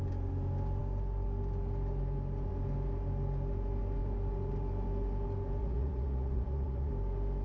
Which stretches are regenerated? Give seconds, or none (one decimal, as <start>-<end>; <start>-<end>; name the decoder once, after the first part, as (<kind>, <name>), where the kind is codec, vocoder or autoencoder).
5.6-6.9 (vocoder, Vocos)